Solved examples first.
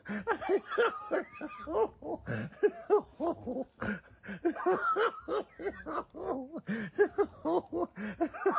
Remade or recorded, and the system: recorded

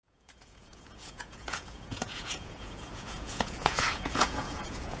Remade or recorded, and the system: remade, vocoder, Vocos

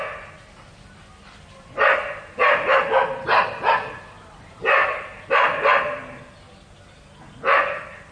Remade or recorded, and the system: recorded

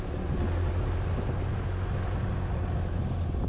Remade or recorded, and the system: recorded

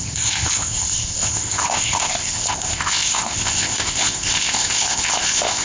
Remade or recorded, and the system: remade, codec, ZipCodec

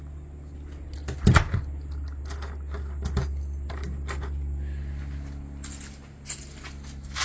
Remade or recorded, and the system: recorded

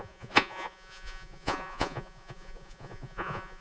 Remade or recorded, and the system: remade, vocoder, Vocos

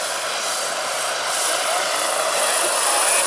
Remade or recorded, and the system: recorded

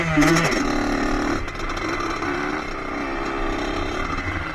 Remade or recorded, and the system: recorded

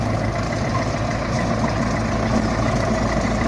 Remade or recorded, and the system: recorded